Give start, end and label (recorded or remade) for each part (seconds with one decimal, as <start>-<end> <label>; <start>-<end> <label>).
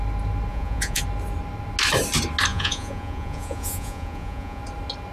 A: 0.0-0.5 recorded; 0.5-1.0 remade; 1.0-2.5 recorded; 2.5-4.6 remade; 4.6-5.1 recorded